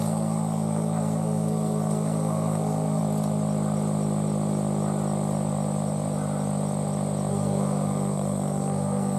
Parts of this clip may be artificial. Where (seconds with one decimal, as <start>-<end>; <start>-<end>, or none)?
0.0-3.0; 7.3-9.2